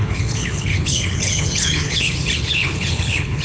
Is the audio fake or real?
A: fake